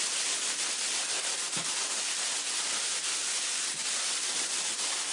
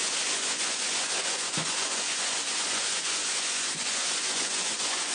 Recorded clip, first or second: first